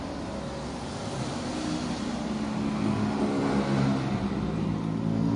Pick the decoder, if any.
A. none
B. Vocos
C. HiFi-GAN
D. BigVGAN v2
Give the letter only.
A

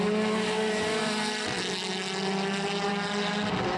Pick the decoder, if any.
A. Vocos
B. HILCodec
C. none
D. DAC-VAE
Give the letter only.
C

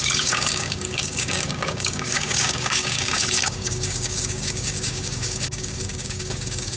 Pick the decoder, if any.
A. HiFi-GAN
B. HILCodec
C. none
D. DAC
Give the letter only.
D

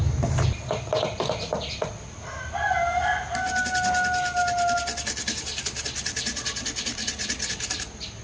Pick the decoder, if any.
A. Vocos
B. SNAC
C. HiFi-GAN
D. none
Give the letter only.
D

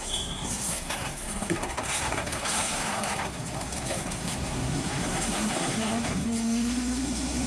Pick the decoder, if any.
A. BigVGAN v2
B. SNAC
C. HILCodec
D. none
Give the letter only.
B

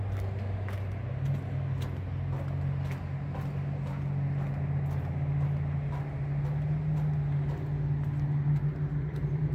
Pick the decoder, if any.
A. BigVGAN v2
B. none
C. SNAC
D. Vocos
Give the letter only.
B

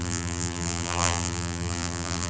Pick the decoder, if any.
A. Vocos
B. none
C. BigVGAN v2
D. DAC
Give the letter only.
C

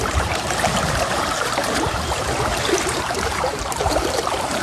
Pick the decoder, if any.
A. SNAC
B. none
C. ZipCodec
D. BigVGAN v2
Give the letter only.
D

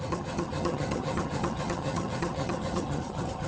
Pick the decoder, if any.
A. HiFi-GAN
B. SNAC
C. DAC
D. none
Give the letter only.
A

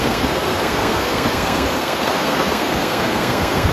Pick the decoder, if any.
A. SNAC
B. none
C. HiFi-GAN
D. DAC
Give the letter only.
A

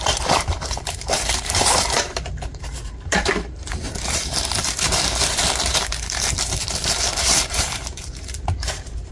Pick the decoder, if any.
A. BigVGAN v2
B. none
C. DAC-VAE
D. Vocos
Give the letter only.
A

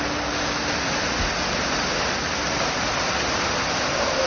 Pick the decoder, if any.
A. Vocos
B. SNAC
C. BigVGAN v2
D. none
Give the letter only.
D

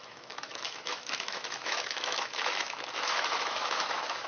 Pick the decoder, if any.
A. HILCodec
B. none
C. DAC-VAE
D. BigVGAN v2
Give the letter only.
C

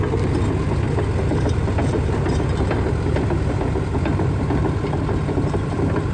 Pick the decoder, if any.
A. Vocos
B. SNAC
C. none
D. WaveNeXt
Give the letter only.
C